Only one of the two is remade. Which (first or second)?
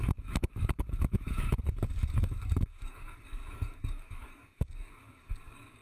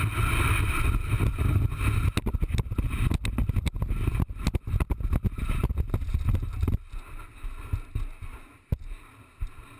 first